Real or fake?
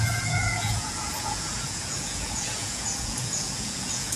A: fake